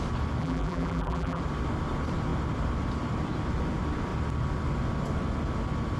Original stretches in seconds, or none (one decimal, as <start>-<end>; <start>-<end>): 0.0-0.4; 1.4-6.0